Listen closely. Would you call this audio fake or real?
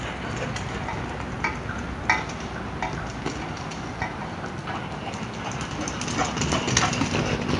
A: real